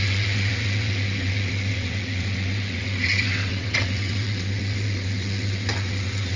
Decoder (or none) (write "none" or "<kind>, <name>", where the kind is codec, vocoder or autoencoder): vocoder, WaveNeXt